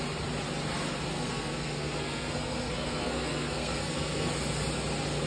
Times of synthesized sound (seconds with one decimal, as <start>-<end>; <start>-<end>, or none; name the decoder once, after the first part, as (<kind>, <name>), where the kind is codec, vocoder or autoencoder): 1.1-4.3 (codec, SNAC)